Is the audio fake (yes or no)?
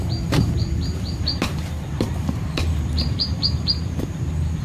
yes